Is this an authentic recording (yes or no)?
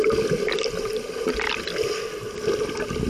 yes